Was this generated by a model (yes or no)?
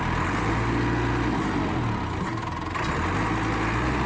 no